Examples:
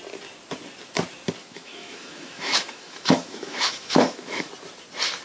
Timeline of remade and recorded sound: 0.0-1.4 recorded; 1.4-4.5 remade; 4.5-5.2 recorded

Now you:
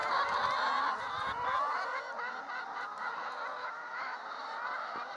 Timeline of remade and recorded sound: 0.0-3.6 recorded; 3.6-4.2 remade; 4.2-5.2 recorded

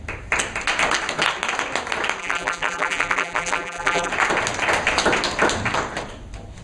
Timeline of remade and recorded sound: 0.0-2.2 recorded; 2.2-4.1 remade; 4.1-6.6 recorded

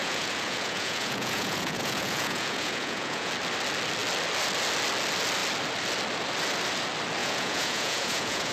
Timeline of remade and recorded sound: 0.0-3.3 remade; 3.3-7.2 recorded; 7.2-8.5 remade

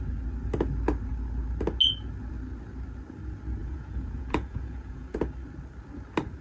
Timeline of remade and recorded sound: 0.0-3.6 recorded; 3.6-5.2 remade; 5.2-6.4 recorded